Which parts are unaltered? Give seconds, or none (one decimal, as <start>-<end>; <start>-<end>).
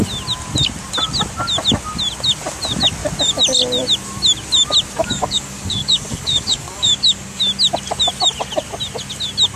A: 0.0-5.0; 7.4-9.6